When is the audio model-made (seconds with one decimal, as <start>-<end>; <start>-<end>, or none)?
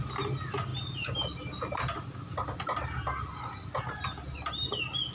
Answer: none